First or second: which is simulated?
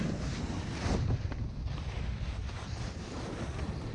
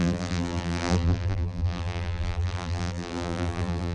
second